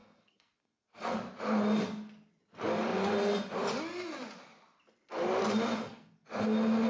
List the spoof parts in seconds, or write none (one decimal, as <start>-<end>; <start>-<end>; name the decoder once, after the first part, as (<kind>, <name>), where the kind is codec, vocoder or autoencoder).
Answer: 0.0-1.2 (codec, SNAC); 5.8-6.3